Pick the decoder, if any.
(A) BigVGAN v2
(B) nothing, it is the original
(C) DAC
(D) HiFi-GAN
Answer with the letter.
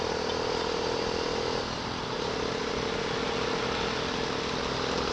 B